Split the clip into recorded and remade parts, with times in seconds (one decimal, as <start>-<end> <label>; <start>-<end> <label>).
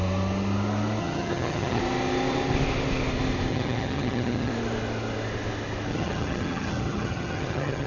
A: 0.0-1.0 recorded; 1.0-1.8 remade; 1.8-3.5 recorded; 3.5-4.5 remade; 4.5-5.9 recorded; 5.9-7.9 remade